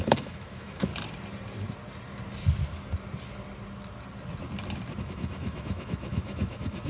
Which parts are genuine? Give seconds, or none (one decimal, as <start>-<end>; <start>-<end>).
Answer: 0.9-5.0